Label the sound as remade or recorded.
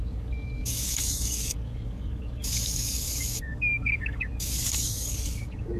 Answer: remade